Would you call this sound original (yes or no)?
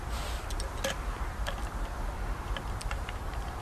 yes